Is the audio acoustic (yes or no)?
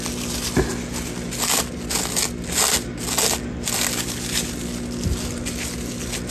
yes